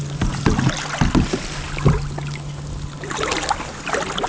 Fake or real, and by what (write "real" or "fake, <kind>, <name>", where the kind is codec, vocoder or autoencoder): real